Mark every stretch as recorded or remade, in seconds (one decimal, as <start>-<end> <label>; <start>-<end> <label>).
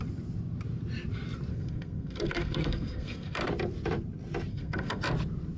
0.0-1.5 recorded; 1.5-3.4 remade; 3.4-4.5 recorded; 4.5-5.0 remade; 5.0-5.6 recorded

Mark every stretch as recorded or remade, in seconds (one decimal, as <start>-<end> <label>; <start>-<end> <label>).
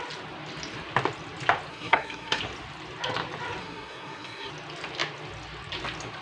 0.0-1.7 recorded; 1.7-2.4 remade; 2.4-3.6 recorded; 3.6-4.5 remade; 4.5-6.2 recorded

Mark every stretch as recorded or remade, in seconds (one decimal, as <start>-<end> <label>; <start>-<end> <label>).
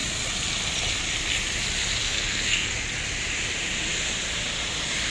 0.0-2.0 recorded; 2.0-2.7 remade; 2.7-5.1 recorded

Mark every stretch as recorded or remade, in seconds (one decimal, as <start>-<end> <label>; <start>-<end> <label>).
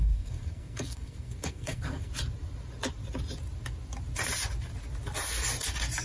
0.0-2.1 remade; 2.1-6.0 recorded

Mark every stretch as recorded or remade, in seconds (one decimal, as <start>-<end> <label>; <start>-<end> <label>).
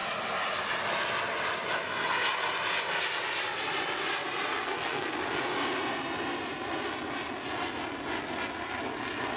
0.0-4.5 recorded; 4.5-5.4 remade; 5.4-9.4 recorded